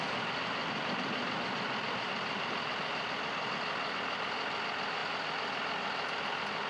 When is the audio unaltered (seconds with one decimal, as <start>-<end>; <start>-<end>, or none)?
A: 0.0-6.7